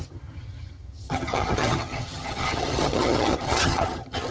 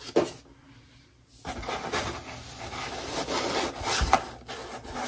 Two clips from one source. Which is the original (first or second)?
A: second